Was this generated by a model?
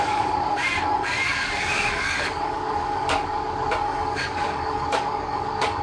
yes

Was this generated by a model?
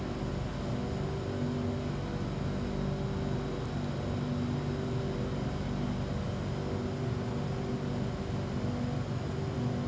no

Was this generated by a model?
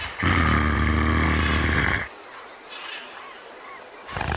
no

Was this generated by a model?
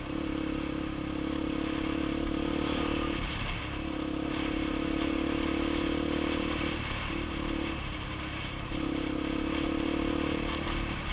no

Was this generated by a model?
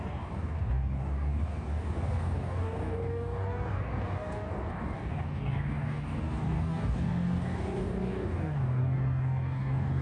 yes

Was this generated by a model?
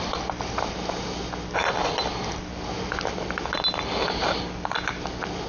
no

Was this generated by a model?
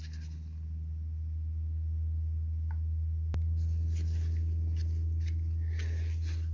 no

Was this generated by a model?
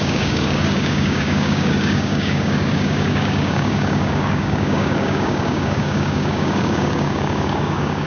yes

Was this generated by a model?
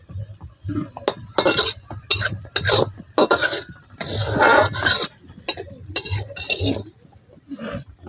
no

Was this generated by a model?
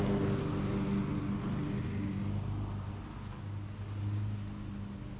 no